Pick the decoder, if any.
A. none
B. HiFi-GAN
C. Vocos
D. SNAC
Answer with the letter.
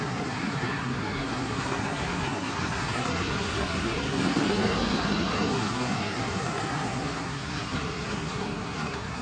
D